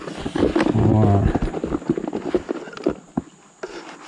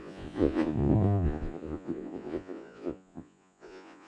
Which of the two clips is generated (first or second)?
second